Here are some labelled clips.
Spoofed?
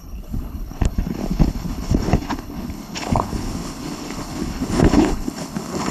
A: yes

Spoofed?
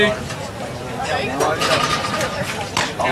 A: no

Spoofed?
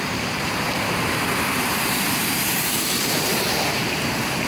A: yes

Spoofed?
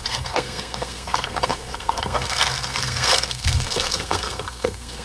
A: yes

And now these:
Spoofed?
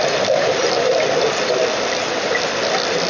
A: no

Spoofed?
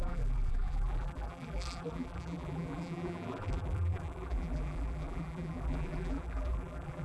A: yes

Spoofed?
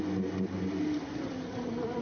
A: no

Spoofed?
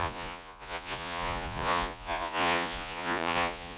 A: yes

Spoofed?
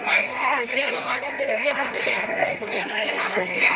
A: yes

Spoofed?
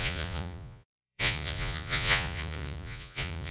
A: yes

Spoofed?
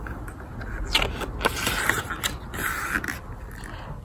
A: no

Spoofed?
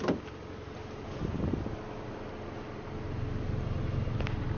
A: no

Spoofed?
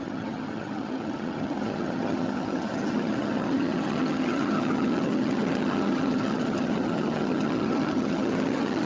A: yes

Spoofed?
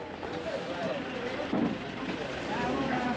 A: yes